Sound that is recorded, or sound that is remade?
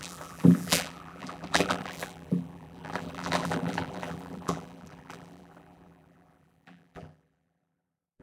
remade